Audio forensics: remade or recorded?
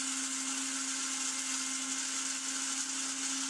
recorded